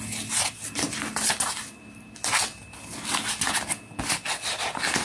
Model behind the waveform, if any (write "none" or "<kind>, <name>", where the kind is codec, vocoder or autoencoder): none